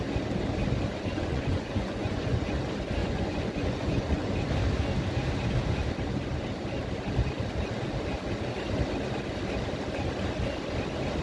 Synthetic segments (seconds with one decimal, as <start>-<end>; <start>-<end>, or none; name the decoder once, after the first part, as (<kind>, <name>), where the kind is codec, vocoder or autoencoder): 1.1-2.5 (vocoder, Vocos); 3.0-4.5